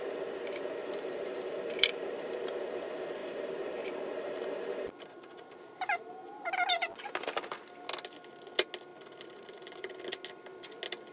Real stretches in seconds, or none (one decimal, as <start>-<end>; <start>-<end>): 0.0-0.8; 2.4-3.2; 6.5-8.9; 10.0-11.1